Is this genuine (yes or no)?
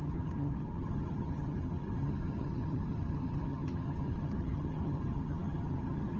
no